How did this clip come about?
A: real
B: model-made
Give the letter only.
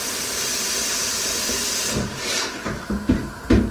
B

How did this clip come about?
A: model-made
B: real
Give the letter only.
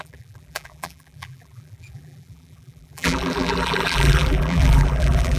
A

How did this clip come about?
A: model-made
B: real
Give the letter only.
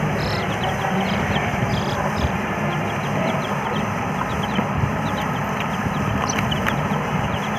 A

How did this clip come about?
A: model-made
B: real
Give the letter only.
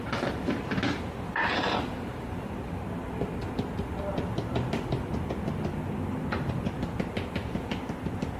A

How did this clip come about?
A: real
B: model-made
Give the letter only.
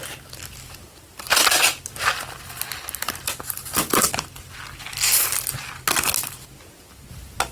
A